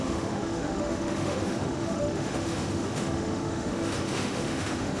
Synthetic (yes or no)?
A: yes